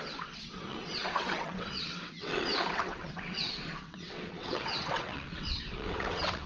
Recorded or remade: remade